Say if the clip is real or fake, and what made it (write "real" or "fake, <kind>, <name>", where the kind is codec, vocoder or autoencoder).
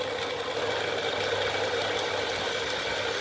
real